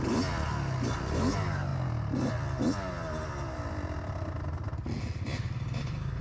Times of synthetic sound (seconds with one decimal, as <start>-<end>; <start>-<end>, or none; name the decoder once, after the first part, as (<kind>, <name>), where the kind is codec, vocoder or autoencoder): none